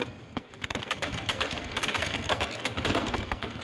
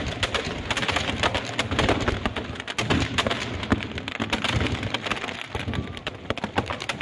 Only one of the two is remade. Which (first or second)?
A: first